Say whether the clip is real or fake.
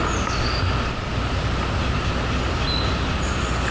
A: real